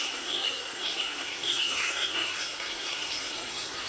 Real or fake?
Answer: fake